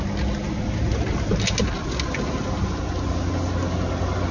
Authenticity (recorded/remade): recorded